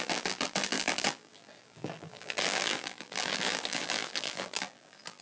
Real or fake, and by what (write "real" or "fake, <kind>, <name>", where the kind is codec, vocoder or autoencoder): fake, vocoder, BigVGAN v2